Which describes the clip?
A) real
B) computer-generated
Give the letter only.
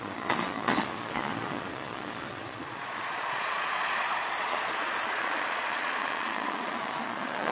B